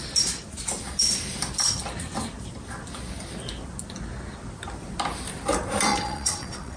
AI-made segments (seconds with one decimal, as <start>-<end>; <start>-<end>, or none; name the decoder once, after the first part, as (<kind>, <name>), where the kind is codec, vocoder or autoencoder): 5.9-6.8 (vocoder, WaveNeXt)